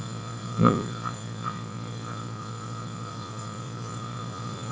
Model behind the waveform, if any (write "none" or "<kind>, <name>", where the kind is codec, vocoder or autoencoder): vocoder, Vocos